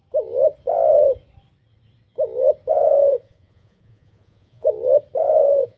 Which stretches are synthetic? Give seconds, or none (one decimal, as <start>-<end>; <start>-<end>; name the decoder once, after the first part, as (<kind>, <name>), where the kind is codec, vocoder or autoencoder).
2.7-4.7 (vocoder, Vocos); 5.2-5.8